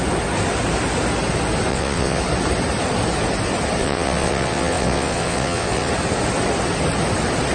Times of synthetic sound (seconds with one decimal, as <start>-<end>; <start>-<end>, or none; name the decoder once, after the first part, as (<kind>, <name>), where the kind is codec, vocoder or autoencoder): 1.7-2.2 (vocoder, WaveNeXt); 3.8-5.9